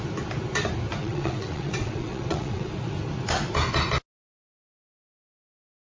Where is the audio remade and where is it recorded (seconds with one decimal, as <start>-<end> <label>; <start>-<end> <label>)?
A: 0.0-1.0 recorded; 1.0-2.7 remade; 2.7-5.8 recorded